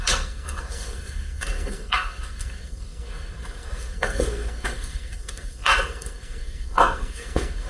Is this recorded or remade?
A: remade